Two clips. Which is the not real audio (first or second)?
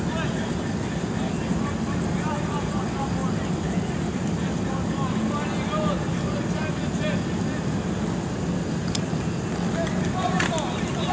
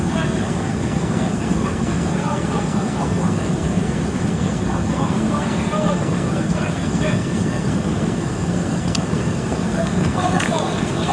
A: second